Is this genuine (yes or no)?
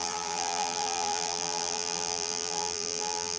no